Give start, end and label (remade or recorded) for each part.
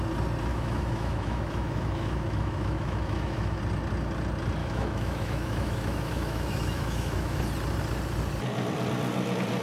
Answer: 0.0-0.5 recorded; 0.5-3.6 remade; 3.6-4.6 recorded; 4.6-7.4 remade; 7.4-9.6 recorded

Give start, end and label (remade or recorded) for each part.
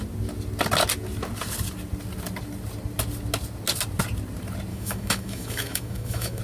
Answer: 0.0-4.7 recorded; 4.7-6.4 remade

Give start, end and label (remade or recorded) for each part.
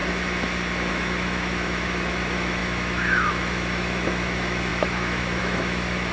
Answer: 0.0-0.9 recorded; 0.9-6.1 remade